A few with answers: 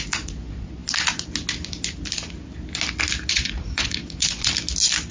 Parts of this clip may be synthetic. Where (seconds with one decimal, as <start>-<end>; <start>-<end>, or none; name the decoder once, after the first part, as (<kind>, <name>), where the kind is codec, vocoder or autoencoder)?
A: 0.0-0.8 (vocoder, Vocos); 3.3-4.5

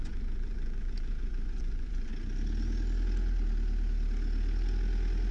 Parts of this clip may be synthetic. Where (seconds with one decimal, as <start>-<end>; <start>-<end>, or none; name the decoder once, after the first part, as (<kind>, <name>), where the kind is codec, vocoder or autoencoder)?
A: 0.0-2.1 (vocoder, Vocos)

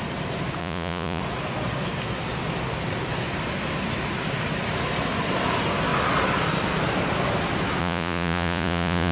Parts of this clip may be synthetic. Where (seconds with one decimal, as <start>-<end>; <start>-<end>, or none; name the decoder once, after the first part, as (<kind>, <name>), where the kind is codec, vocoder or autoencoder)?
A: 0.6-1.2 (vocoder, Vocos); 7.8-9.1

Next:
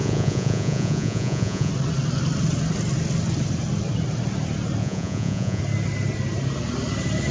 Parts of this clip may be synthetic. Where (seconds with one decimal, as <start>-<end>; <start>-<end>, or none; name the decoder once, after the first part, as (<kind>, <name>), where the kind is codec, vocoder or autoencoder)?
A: 0.0-1.7 (vocoder, Vocos); 4.8-5.6

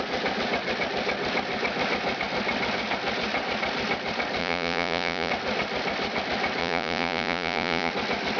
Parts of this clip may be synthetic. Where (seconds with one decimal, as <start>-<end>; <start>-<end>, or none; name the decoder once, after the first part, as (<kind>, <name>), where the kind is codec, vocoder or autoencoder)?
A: 4.4-5.3 (vocoder, Vocos); 6.6-7.9

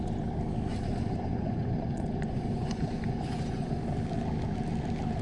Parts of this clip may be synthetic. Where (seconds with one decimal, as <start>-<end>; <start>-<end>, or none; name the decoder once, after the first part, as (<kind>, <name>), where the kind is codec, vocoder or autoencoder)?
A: 0.7-3.8 (vocoder, Vocos)